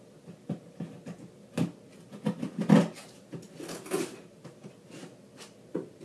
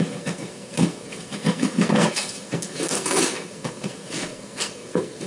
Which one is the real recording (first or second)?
first